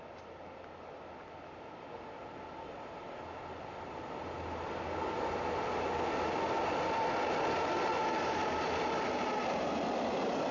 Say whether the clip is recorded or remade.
recorded